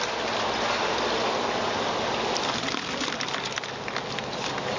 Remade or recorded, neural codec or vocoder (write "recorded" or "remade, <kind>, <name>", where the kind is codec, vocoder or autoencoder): recorded